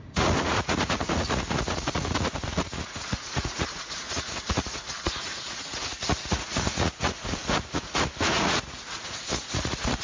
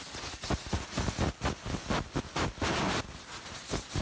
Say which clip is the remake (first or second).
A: first